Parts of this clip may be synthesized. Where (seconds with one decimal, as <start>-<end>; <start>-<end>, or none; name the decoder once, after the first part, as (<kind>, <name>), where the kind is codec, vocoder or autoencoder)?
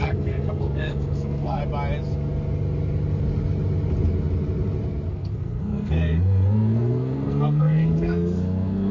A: 0.0-1.6 (codec, SNAC); 5.1-8.9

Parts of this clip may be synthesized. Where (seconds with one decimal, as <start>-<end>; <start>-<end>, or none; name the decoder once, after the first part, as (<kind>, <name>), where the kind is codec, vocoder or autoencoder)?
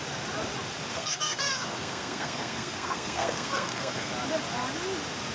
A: 0.9-4.1 (codec, SNAC)